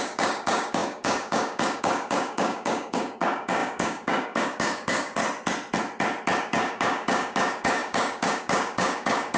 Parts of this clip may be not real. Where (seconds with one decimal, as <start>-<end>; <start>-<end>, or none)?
0.0-5.2; 6.4-9.4